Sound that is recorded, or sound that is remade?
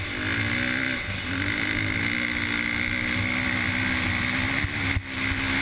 recorded